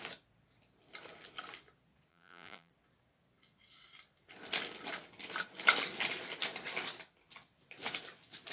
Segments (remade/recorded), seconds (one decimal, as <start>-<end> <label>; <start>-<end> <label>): 0.0-2.1 recorded; 2.1-2.7 remade; 2.7-8.5 recorded